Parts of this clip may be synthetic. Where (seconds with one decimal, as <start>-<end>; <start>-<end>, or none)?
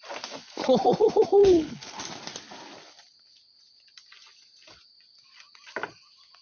1.4-2.0